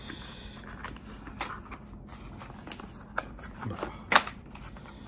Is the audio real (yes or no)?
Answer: yes